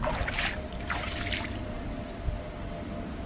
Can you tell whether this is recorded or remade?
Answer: recorded